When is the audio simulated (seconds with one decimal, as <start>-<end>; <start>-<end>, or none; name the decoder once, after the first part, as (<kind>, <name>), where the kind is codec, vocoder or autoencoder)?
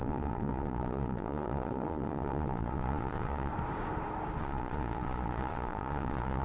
0.0-3.5 (vocoder, Vocos); 4.4-6.4